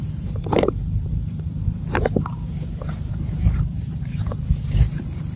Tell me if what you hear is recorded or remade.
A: remade